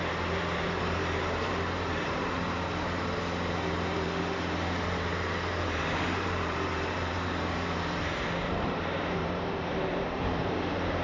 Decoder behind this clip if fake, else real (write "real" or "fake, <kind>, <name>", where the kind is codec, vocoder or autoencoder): fake, vocoder, BigVGAN v2